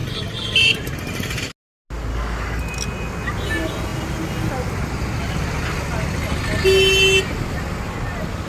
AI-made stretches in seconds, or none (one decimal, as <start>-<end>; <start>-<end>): 2.1-2.6